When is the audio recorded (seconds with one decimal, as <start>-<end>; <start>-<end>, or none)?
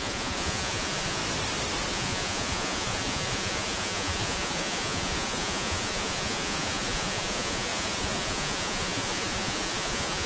1.2-1.9